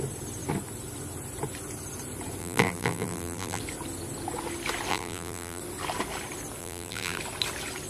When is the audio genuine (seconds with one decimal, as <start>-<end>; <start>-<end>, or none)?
0.0-2.4; 3.6-4.9; 5.6-6.6; 7.2-7.9